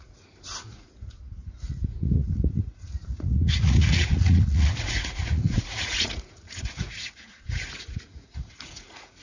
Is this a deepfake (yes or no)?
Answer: yes